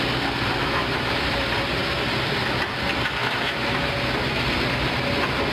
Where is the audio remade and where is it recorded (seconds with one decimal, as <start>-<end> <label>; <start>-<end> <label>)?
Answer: 0.0-0.6 recorded; 0.6-1.3 remade; 1.3-3.2 recorded; 3.2-3.9 remade; 3.9-5.5 recorded